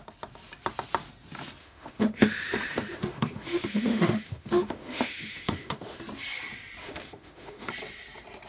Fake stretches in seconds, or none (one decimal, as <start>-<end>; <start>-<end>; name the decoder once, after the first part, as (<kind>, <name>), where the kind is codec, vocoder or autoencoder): 1.6-6.0 (autoencoder, DAC-VAE); 6.8-7.7